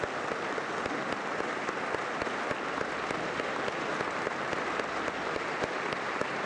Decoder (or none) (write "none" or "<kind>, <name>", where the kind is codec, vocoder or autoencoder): none